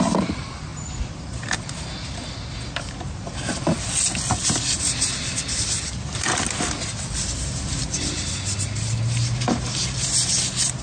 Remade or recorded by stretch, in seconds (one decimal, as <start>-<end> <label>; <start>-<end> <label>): 0.0-10.8 recorded